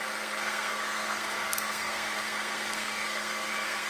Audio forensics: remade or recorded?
remade